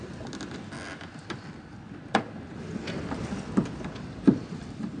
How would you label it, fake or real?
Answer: real